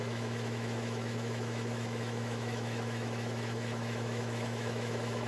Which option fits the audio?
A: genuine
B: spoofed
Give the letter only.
B